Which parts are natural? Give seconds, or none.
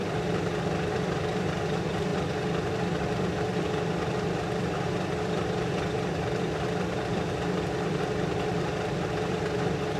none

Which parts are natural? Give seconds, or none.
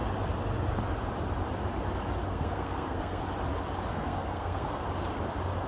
0.0-2.3; 3.2-3.9; 4.8-5.7